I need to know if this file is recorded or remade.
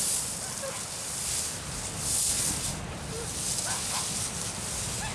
recorded